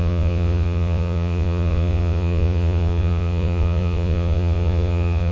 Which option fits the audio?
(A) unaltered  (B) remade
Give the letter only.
B